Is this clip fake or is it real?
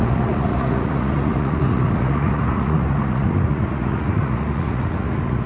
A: fake